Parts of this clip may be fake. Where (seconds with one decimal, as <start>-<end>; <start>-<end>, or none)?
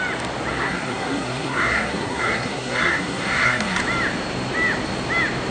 0.5-3.8